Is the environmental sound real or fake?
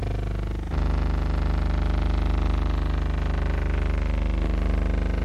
real